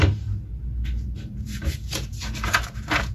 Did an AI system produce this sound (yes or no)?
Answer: yes